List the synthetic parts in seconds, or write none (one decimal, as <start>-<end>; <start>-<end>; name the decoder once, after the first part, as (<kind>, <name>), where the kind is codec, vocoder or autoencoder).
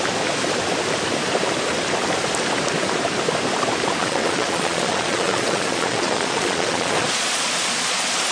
4.0-8.3 (vocoder, Vocos)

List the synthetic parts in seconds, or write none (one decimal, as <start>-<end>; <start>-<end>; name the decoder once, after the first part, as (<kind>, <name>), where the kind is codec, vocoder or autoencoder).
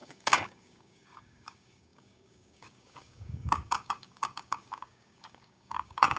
0.0-6.2 (codec, DAC)